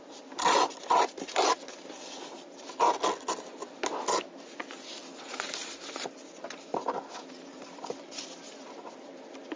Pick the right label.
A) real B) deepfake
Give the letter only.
A